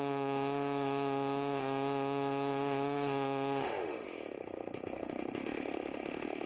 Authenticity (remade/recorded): remade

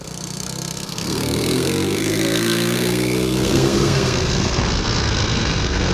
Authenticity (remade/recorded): remade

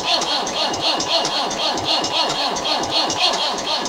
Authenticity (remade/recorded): remade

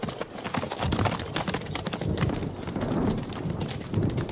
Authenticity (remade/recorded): recorded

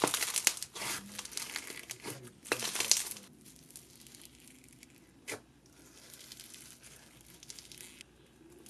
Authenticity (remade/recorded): recorded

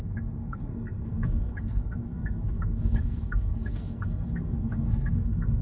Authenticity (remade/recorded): remade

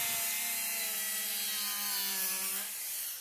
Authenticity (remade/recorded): recorded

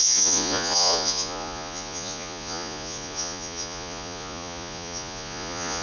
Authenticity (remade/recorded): remade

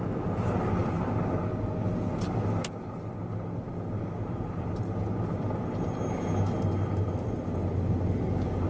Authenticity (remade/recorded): recorded